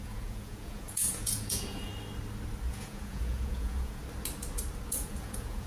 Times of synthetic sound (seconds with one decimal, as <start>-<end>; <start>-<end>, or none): 0.0-1.9; 2.7-4.0; 4.9-5.7

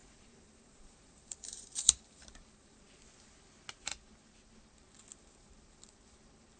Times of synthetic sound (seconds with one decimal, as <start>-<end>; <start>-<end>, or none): 0.0-2.8